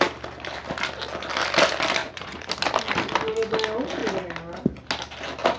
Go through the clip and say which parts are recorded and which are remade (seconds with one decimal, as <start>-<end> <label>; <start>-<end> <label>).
0.0-2.0 recorded; 2.0-2.5 remade; 2.5-5.6 recorded